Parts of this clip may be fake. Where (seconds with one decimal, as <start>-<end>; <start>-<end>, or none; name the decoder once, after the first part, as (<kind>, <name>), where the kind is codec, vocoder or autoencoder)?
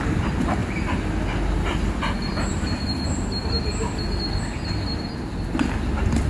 none